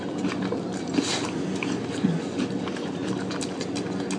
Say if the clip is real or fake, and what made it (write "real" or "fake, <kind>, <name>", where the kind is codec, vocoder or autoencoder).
real